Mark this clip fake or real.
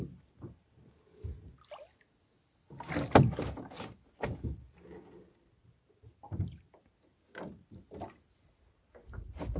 real